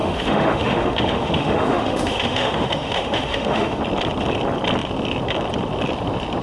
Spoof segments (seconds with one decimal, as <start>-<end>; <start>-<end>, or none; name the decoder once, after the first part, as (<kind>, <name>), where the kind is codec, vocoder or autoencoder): 0.0-3.8 (autoencoder, DAC-VAE)